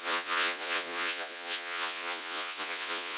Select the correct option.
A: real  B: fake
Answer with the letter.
B